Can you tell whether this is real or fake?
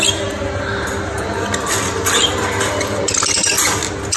real